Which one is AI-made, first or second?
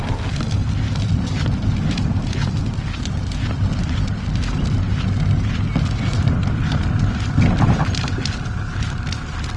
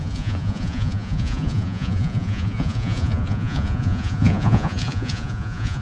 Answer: second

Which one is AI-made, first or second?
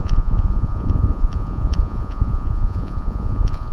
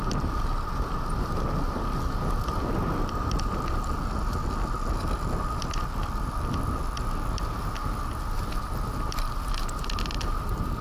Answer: first